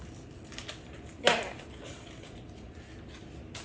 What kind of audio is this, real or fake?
real